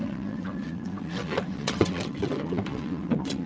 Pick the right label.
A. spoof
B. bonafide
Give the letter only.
A